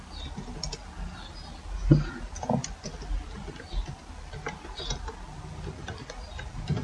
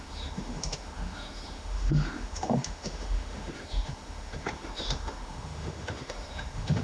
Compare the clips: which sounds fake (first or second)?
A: second